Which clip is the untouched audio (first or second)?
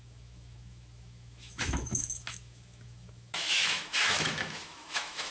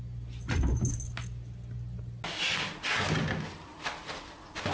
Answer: second